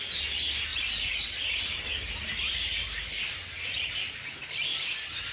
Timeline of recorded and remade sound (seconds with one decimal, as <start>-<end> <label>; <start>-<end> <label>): 0.0-5.3 recorded